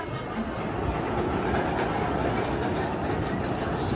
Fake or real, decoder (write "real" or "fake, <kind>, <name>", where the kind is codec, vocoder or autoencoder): real